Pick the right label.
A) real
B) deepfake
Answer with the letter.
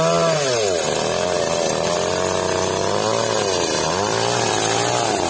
A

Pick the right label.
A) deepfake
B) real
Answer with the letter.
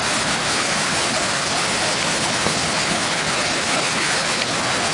A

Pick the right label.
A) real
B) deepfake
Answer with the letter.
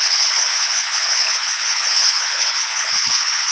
B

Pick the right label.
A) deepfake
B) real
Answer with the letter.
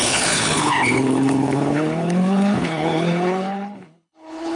A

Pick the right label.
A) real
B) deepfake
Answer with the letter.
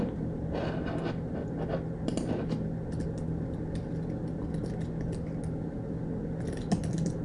A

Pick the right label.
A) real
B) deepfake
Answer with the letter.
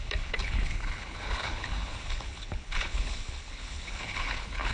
B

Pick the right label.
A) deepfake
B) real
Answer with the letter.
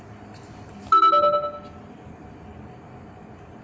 B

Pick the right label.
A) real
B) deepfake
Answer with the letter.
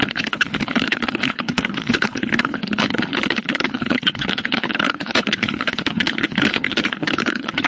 B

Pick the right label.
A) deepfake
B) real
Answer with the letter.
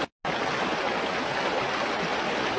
B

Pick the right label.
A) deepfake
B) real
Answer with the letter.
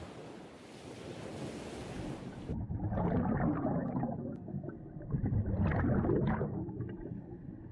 B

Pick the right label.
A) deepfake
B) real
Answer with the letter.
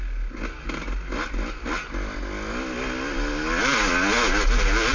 B